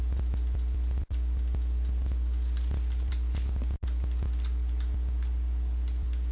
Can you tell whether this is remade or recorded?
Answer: recorded